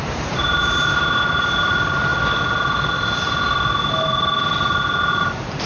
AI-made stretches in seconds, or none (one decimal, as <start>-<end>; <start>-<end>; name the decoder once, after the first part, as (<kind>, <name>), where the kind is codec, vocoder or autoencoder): 0.0-2.1 (vocoder, BigVGAN v2); 5.2-5.7